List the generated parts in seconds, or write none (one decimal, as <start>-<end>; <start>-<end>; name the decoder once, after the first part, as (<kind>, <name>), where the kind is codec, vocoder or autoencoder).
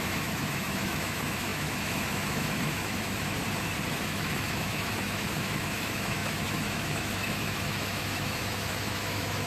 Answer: 0.0-3.4 (autoencoder, DAC-VAE); 3.9-9.5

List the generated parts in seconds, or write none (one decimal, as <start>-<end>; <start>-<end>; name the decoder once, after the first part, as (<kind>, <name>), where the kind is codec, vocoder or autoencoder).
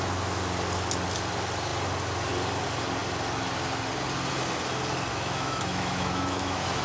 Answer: 5.1-6.8 (autoencoder, DAC-VAE)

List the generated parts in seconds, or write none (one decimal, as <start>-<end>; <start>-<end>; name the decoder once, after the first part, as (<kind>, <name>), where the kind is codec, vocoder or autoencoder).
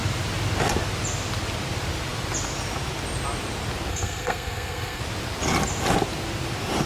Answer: 3.9-5.0 (codec, SNAC)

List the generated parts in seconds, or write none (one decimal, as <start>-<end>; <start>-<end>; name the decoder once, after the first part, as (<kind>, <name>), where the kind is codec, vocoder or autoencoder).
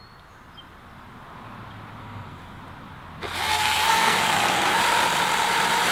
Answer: 2.0-2.6 (codec, SNAC); 3.5-4.8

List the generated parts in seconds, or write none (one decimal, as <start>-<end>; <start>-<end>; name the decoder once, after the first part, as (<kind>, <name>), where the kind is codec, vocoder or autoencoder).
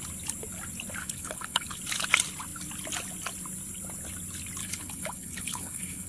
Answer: 1.0-1.8 (codec, HILCodec); 4.6-6.1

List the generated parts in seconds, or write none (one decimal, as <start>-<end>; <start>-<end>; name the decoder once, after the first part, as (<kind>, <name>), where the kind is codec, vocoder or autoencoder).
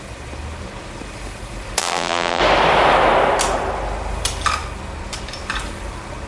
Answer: 1.8-2.4 (vocoder, BigVGAN v2)